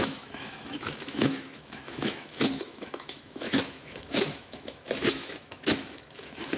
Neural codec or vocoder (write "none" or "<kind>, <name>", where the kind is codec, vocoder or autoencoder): autoencoder, DAC-VAE